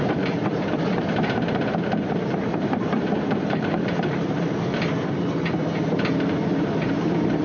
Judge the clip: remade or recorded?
remade